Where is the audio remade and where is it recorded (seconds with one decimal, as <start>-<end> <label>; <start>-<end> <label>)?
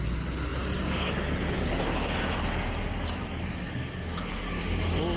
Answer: 0.0-5.2 recorded